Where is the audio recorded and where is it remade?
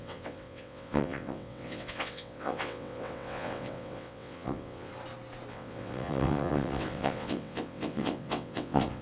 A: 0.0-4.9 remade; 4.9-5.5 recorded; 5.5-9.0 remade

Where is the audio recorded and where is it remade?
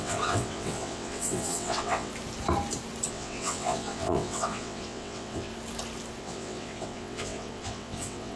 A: 0.0-2.1 remade; 2.1-3.1 recorded; 3.1-5.5 remade; 5.5-6.2 recorded; 6.2-8.4 remade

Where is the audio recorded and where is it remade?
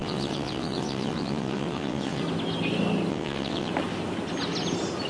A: 0.0-2.2 remade; 2.2-3.1 recorded; 3.1-3.7 remade; 3.7-5.1 recorded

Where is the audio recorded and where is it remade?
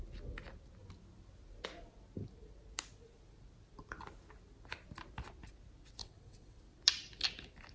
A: 0.0-6.0 recorded; 6.0-6.6 remade; 6.6-7.7 recorded